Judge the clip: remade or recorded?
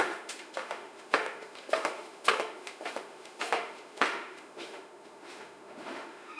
remade